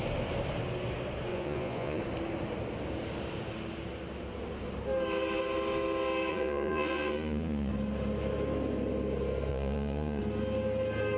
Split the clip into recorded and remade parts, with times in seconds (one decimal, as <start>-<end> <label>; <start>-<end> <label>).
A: 0.0-1.3 recorded; 1.3-2.0 remade; 2.0-6.3 recorded; 6.3-7.7 remade; 7.7-9.5 recorded; 9.5-10.2 remade; 10.2-11.2 recorded